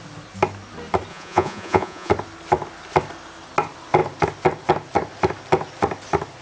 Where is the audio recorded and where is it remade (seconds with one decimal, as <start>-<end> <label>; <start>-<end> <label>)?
0.0-1.1 recorded; 1.1-2.1 remade; 2.1-6.4 recorded